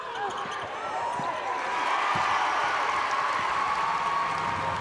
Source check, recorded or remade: recorded